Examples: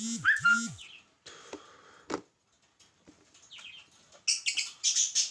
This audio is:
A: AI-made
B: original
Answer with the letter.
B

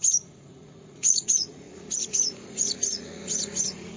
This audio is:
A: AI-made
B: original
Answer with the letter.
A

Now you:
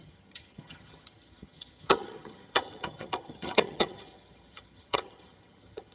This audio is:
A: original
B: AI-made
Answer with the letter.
B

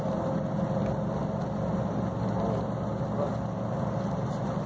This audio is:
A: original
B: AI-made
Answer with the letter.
A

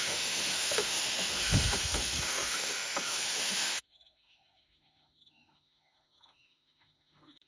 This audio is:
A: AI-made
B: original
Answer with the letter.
A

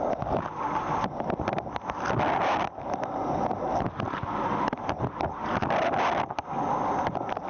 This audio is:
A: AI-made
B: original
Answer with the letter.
B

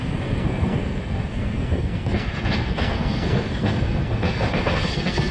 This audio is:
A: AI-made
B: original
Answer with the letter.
A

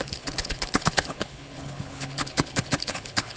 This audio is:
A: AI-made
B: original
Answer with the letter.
A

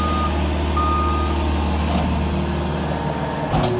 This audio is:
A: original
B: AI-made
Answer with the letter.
A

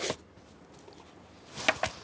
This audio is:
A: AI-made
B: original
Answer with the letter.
B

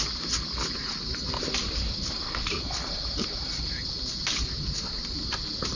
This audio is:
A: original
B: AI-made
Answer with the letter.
A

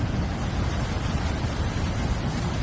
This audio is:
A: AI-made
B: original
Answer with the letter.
B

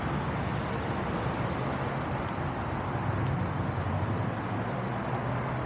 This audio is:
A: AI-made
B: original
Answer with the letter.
B